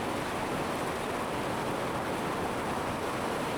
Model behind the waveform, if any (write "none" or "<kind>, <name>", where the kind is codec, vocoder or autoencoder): none